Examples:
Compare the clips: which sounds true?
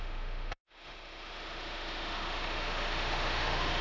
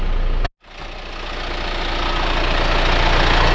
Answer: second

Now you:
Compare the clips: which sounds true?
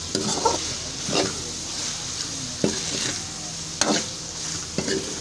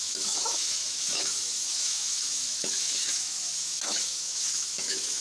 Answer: first